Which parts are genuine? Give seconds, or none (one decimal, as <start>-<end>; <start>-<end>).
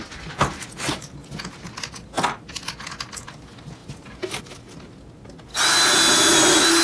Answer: 0.0-6.8